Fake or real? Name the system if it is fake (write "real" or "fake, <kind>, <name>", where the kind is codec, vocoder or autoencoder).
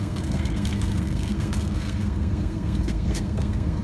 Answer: fake, codec, SNAC